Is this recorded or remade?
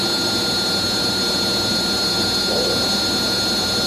remade